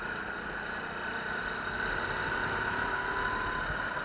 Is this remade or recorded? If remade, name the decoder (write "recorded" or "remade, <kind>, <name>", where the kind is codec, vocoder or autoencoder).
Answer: recorded